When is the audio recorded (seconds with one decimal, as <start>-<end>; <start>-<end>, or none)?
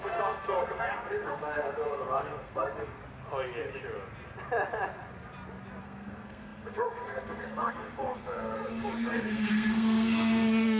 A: 3.0-5.8